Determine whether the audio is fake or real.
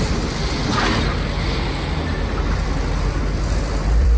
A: fake